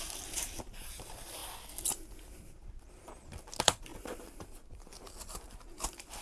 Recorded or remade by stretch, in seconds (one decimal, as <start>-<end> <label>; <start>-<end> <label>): 0.0-1.4 remade; 1.4-2.3 recorded; 2.3-6.2 remade